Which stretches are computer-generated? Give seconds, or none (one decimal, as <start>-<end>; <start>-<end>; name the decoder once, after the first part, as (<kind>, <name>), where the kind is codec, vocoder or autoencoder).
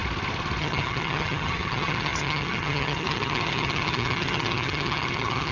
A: 0.6-5.5 (vocoder, HiFi-GAN)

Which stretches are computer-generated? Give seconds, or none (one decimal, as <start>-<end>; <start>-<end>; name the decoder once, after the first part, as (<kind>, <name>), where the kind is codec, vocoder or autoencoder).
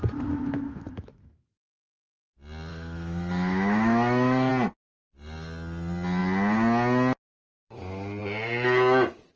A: 0.0-2.3 (autoencoder, DAC-VAE); 2.7-4.5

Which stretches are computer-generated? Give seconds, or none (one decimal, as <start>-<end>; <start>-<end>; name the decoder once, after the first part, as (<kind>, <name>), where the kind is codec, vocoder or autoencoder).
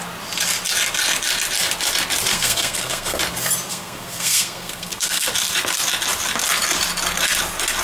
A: 2.3-3.2 (codec, SNAC); 3.7-5.3